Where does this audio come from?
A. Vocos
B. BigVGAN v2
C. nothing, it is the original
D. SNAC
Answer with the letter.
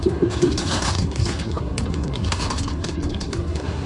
D